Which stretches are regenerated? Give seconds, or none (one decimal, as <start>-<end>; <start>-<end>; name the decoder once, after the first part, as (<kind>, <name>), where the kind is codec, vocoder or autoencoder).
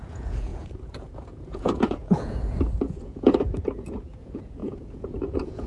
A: 0.0-5.7 (vocoder, Vocos)